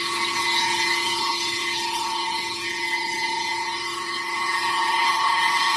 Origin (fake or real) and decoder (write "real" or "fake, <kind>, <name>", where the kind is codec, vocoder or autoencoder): fake, codec, HILCodec